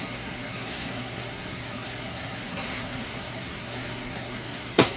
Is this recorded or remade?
remade